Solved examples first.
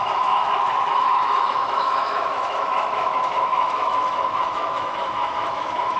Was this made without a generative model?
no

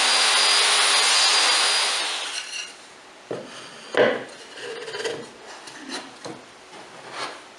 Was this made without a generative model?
yes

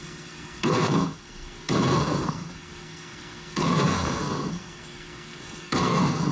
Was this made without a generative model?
no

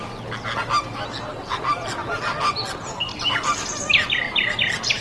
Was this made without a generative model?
yes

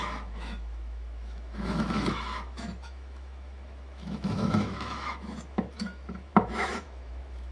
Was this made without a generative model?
no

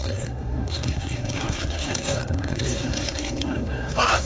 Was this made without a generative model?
no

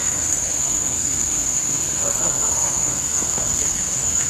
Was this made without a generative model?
no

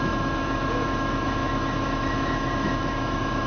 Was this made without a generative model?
no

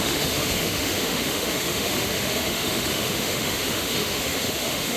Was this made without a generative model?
no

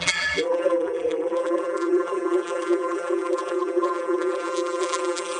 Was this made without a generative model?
no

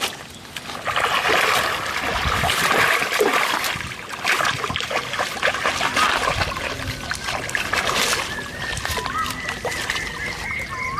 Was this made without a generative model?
yes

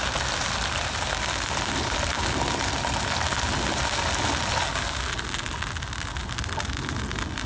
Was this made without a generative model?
yes